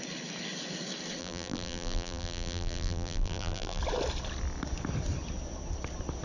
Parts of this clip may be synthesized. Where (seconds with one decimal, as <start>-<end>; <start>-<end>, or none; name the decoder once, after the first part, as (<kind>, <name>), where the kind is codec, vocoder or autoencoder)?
1.2-3.8 (vocoder, BigVGAN v2)

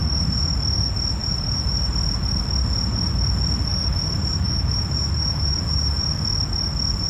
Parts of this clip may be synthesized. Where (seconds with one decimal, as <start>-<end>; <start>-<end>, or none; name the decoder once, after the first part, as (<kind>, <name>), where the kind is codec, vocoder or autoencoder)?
1.2-1.9 (vocoder, BigVGAN v2); 3.7-6.0